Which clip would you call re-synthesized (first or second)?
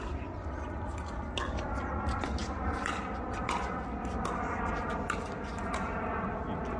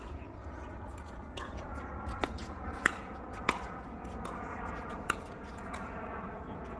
second